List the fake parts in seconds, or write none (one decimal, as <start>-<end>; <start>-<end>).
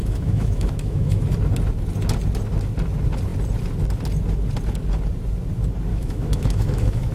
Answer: 0.0-1.2; 5.9-7.1